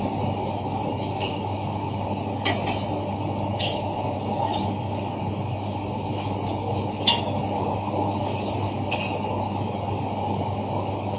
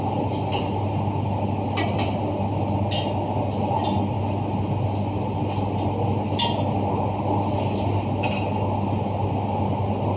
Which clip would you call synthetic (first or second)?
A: first